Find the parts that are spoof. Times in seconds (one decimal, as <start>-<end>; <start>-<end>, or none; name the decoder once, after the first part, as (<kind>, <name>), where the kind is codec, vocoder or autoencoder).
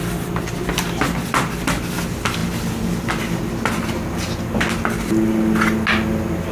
none